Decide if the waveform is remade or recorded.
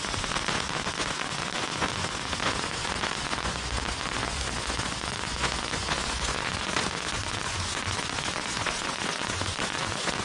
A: remade